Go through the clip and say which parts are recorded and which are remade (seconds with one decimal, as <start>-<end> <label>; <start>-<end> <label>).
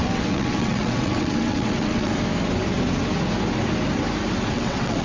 0.0-2.1 remade; 2.1-4.5 recorded; 4.5-5.0 remade